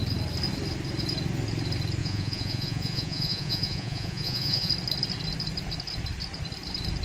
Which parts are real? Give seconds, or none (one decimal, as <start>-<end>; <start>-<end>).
0.0-2.0; 4.7-7.0